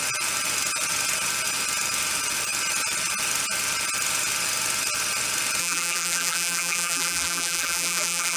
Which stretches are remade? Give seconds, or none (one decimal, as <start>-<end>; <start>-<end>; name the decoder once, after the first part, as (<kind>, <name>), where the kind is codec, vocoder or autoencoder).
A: 5.6-8.4 (vocoder, BigVGAN v2)